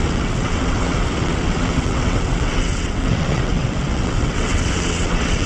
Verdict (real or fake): fake